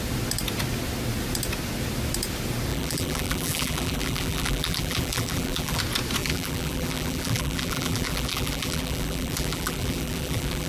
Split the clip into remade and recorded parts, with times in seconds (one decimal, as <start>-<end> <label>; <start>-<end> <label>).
0.0-2.7 recorded; 2.7-5.8 remade; 5.8-6.2 recorded; 6.2-10.7 remade